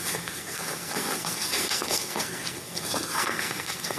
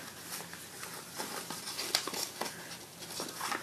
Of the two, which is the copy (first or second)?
first